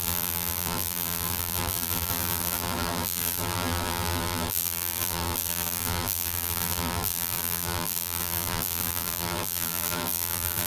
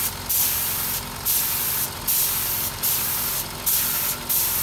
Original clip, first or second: second